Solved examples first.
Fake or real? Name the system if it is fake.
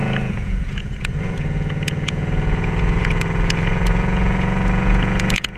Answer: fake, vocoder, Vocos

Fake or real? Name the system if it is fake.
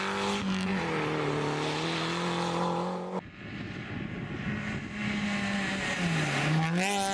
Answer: real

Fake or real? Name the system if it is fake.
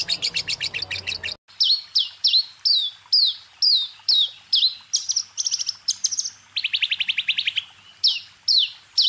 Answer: real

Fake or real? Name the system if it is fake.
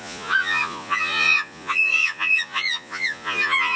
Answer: fake, vocoder, Vocos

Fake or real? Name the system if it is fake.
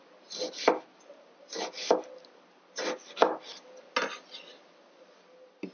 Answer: real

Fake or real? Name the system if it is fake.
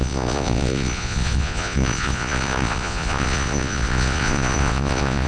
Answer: fake, vocoder, Vocos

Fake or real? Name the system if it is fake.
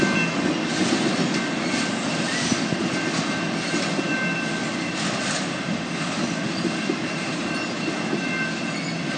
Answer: real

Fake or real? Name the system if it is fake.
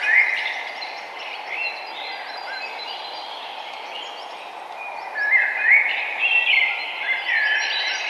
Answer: real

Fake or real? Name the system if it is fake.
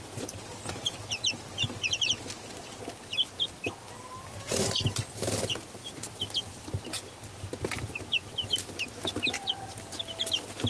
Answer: real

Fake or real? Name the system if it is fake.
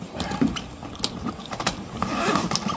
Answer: real